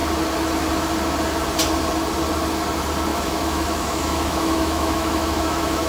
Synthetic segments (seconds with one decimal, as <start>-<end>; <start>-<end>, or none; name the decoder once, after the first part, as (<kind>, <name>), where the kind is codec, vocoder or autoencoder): 3.1-5.9 (autoencoder, DAC-VAE)